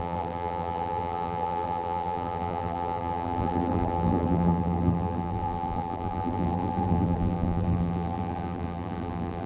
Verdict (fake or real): fake